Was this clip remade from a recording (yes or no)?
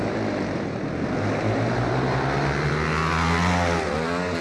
no